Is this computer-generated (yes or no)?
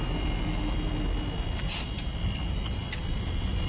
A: no